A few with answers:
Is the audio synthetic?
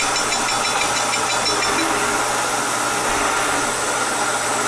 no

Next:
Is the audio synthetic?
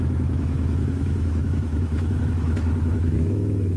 yes